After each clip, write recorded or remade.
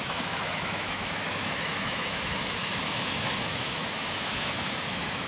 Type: remade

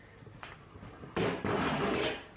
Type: recorded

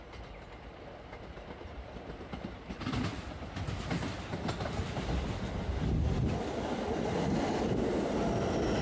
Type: recorded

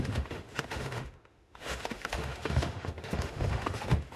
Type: remade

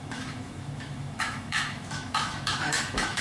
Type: remade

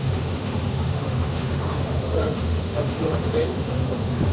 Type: remade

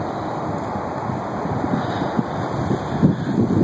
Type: recorded